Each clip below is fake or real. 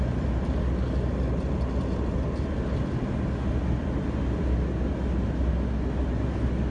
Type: real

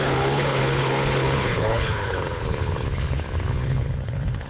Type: fake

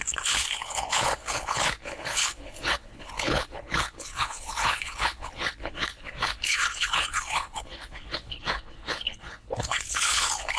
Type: fake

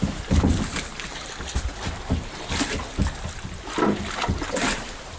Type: real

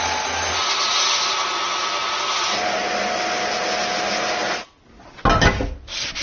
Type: real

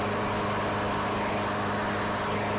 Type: real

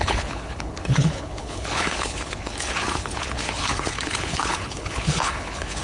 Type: fake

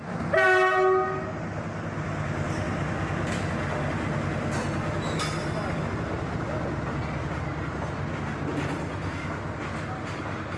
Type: real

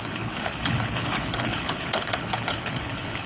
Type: fake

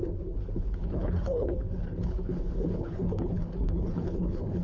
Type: fake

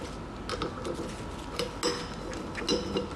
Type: real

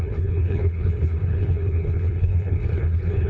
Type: fake